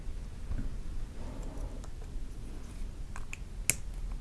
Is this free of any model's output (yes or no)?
yes